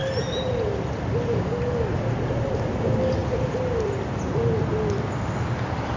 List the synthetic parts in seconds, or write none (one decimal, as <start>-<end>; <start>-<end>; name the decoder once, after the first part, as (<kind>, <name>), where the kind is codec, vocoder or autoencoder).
3.2-4.6 (vocoder, BigVGAN v2)